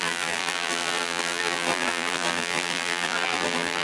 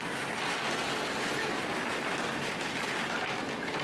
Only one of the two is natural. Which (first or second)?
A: second